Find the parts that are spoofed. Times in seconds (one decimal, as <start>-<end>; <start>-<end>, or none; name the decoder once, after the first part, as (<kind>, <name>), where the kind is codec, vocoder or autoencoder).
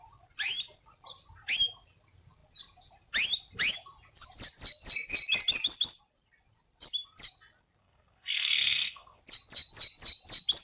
7.8-9.2 (codec, SNAC)